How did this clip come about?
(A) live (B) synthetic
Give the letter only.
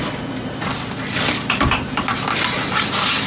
A